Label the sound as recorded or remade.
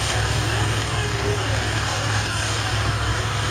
remade